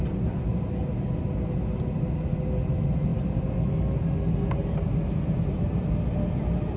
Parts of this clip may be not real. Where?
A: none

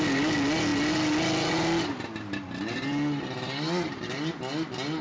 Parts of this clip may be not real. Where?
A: none

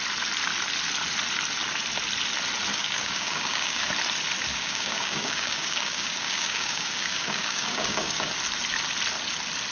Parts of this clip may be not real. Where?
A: 2.7-3.9 (codec, DAC); 4.5-8.3

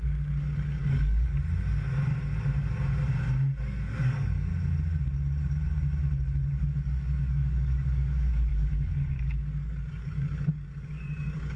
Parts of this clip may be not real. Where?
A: 0.0-1.3 (codec, DAC); 3.6-4.5; 6.5-11.6

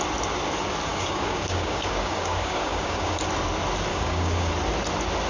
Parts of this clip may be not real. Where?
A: 0.9-3.2 (codec, DAC); 3.9-4.5

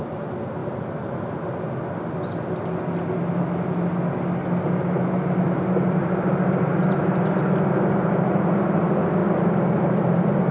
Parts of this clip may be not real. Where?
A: none

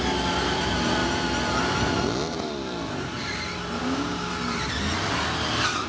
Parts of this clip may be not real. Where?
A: 3.8-4.3 (codec, DAC)